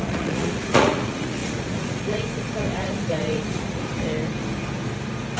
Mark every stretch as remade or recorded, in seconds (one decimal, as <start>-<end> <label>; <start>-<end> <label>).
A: 0.0-3.9 remade; 3.9-5.4 recorded